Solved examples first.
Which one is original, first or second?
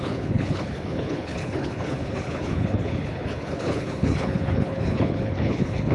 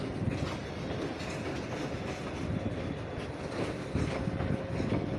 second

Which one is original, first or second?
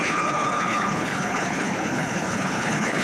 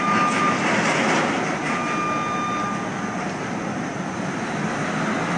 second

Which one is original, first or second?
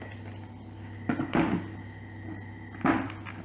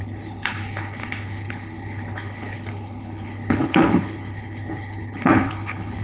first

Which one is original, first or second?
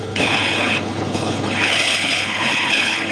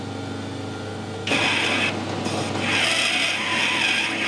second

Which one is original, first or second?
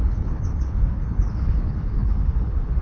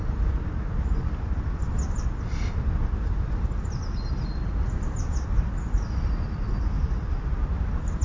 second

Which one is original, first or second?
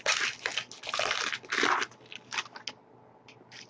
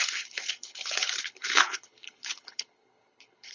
first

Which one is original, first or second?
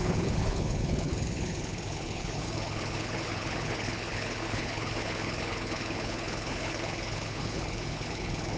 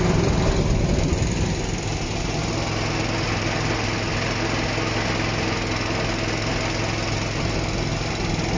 second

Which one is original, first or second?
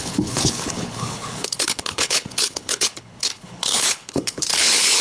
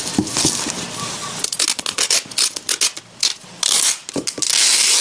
second